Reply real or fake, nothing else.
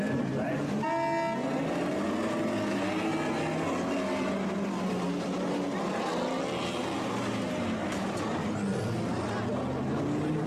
real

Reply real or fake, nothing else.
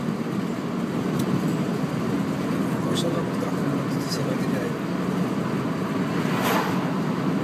real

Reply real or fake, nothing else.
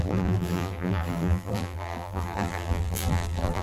fake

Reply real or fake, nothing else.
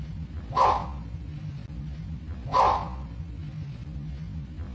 real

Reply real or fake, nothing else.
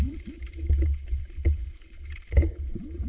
fake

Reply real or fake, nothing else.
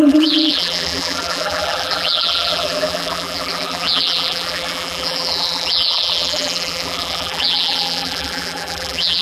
fake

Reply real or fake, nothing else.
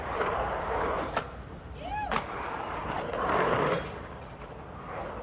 fake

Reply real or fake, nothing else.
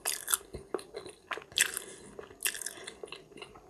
real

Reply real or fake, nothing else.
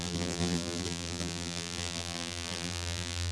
fake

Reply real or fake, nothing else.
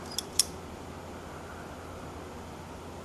real